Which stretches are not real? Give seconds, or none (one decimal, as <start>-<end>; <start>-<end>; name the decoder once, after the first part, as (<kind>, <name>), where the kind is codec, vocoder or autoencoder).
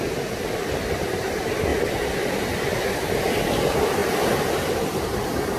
4.0-5.6 (vocoder, BigVGAN v2)